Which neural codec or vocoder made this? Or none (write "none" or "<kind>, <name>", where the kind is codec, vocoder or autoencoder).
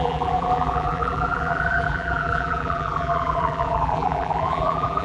vocoder, BigVGAN v2